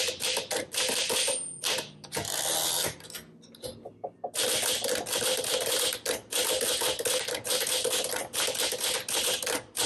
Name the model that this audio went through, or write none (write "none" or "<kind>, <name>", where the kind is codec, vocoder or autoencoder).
none